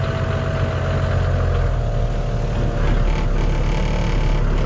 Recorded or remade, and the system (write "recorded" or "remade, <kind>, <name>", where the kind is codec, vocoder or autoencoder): recorded